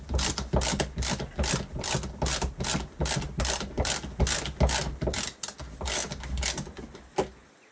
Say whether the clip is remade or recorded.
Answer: recorded